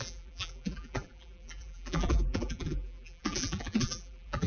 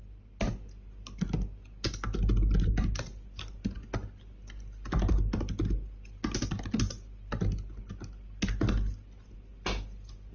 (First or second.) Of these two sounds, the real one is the second